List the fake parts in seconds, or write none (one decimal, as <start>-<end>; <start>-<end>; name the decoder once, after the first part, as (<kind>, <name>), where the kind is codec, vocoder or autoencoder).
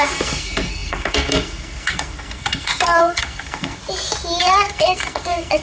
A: 0.0-3.8 (codec, SNAC); 4.4-5.6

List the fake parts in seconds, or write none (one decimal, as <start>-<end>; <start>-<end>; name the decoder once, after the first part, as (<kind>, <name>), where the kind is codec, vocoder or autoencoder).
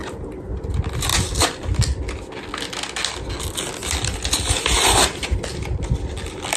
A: 3.8-6.6 (vocoder, BigVGAN v2)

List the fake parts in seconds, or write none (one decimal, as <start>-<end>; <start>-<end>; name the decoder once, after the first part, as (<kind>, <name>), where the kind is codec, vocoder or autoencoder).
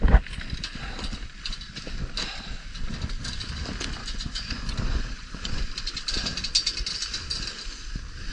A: 4.0-5.5 (vocoder, Vocos)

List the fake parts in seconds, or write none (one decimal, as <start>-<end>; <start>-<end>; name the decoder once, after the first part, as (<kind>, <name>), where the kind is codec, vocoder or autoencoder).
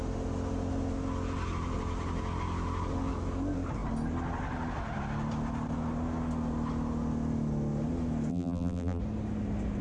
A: 8.3-9.0 (vocoder, BigVGAN v2)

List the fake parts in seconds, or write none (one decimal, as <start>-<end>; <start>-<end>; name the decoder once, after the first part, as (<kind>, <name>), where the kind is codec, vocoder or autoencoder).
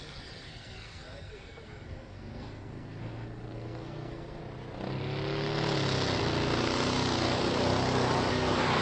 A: 0.0-4.4 (codec, SNAC); 8.3-8.8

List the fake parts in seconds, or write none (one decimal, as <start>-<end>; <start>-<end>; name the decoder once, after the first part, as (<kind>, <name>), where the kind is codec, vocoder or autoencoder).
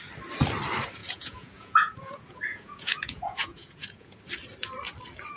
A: 1.0-4.2 (vocoder, Vocos)